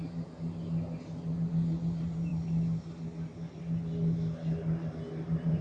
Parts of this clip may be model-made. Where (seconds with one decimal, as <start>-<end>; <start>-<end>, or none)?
none